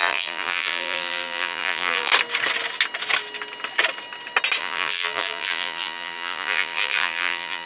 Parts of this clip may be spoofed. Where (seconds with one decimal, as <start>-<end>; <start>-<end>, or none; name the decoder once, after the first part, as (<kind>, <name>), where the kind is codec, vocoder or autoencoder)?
0.0-2.1 (vocoder, BigVGAN v2); 4.6-7.7